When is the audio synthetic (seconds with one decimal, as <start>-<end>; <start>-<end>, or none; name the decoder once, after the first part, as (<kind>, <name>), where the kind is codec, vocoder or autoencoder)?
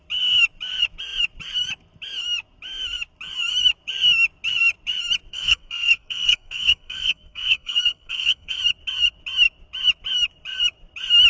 5.3-8.6 (codec, SNAC)